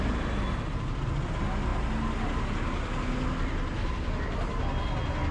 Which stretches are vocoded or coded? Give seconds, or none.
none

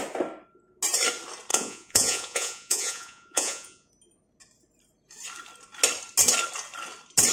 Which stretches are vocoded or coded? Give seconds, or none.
1.5-3.9 (vocoder, Vocos)

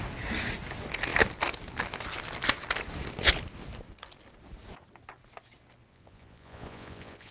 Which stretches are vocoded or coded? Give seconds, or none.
5.9-7.3 (vocoder, Vocos)

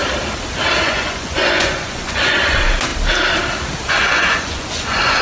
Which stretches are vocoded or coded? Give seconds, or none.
0.8-2.9 (vocoder, Vocos); 3.9-5.2

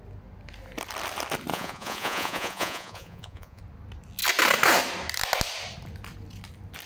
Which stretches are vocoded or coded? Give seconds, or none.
1.5-3.6 (vocoder, Vocos)

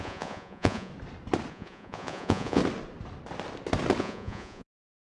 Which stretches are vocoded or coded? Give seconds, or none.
0.0-0.9 (vocoder, Vocos); 1.5-2.6; 4.0-5.0

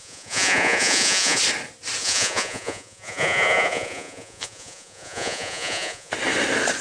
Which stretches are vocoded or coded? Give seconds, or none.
0.0-1.4 (vocoder, Vocos); 2.0-6.1